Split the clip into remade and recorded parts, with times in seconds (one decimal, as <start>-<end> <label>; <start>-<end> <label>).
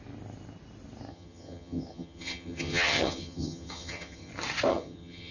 0.0-1.1 recorded; 1.1-4.3 remade; 4.3-4.7 recorded; 4.7-5.3 remade